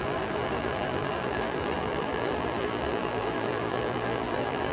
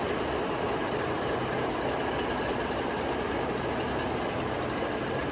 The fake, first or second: first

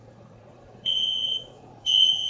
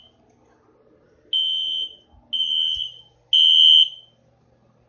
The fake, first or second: first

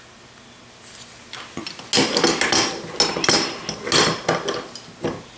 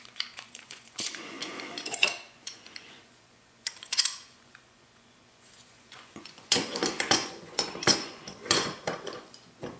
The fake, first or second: second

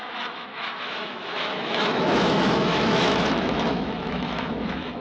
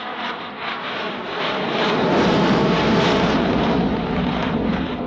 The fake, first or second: first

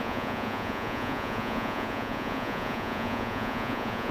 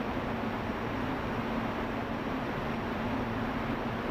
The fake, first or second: first